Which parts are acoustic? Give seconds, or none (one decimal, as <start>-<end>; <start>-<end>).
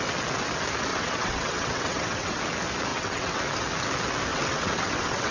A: 0.0-0.9; 2.4-2.9; 3.4-4.3